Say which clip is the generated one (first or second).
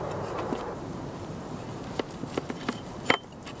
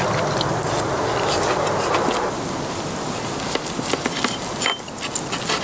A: first